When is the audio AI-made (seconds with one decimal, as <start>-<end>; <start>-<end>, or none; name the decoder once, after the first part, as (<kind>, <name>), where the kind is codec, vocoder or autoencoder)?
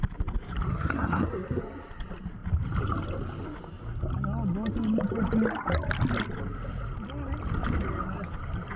0.7-1.6 (codec, SNAC)